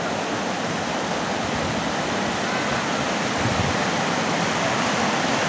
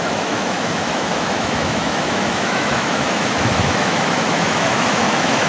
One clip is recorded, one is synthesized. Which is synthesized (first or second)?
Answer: second